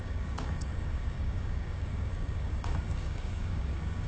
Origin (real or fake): fake